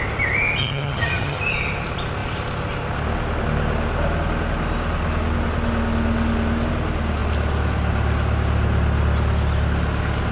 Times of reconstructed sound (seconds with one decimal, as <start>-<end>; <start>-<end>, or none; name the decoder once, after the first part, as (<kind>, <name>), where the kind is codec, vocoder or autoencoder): 0.6-1.4 (vocoder, HiFi-GAN)